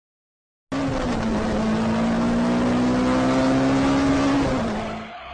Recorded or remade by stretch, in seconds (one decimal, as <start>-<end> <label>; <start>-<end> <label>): 0.0-5.3 recorded